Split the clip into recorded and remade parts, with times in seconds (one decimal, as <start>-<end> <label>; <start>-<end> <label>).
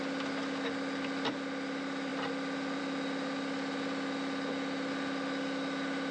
0.0-6.1 recorded